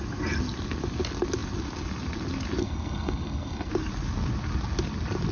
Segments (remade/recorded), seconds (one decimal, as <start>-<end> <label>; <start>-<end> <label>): 0.0-2.6 recorded; 2.6-3.7 remade; 3.7-5.3 recorded